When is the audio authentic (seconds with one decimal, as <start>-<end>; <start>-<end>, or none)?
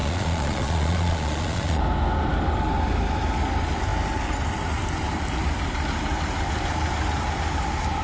1.8-8.0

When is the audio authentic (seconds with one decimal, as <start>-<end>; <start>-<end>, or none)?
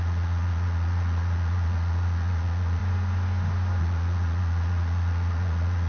2.8-3.8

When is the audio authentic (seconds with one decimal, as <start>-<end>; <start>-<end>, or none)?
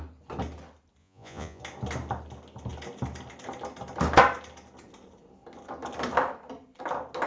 0.0-1.0; 1.6-7.3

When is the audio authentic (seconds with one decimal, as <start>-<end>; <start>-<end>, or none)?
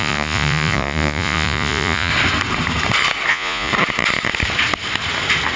2.1-3.3; 3.7-5.6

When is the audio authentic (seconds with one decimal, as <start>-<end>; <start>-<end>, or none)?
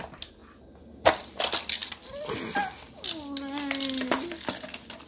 0.0-5.1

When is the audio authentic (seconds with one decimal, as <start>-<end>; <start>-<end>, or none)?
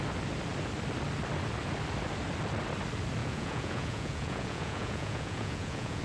0.0-3.2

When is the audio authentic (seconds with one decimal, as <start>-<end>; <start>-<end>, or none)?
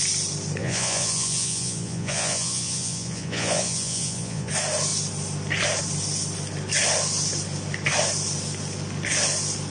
0.0-0.6; 4.5-9.7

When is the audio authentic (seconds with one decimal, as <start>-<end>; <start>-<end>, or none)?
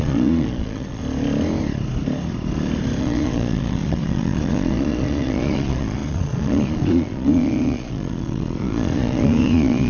1.0-3.0